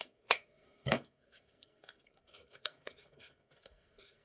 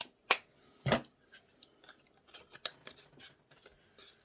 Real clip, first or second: second